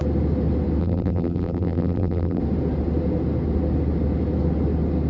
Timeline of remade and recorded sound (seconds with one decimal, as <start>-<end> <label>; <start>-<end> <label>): 0.0-0.8 recorded; 0.8-2.4 remade; 2.4-5.1 recorded